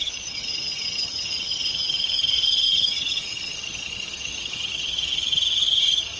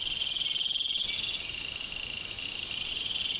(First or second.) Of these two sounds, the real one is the second